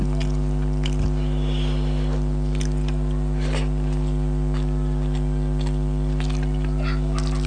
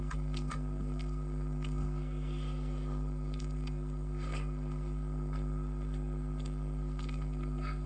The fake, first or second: second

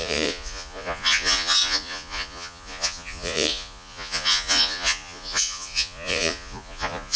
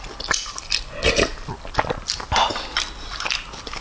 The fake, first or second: first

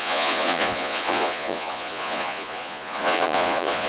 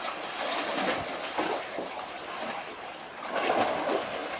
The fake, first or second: first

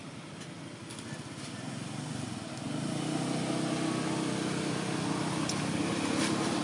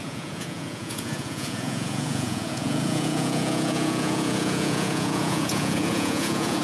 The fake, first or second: second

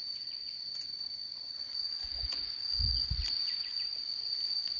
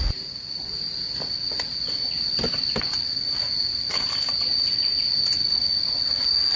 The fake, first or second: first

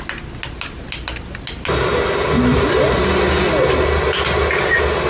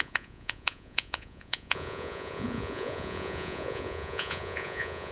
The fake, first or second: second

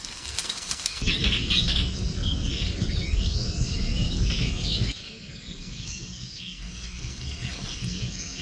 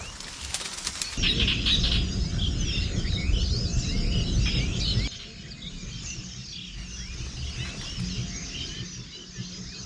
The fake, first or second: first